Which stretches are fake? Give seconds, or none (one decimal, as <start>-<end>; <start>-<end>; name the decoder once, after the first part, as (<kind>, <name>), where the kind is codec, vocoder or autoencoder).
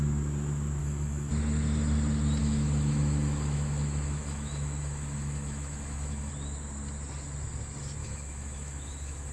0.8-1.3 (autoencoder, DAC-VAE); 2.4-6.3; 8.0-9.3